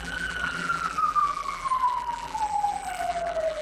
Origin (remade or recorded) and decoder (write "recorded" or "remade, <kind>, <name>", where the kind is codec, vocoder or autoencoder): remade, vocoder, BigVGAN v2